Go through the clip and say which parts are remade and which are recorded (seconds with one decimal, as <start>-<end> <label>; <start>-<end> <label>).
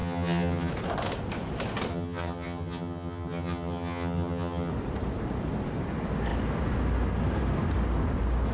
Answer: 0.0-0.7 remade; 0.7-1.9 recorded; 1.9-4.7 remade; 4.7-8.5 recorded